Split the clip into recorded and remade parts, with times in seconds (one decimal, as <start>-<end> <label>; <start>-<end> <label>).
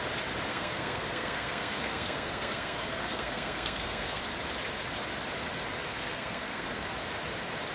0.0-0.5 recorded; 0.5-4.2 remade; 4.2-5.9 recorded; 5.9-6.9 remade; 6.9-7.7 recorded